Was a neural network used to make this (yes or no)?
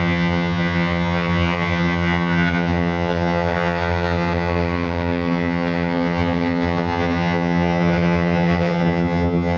yes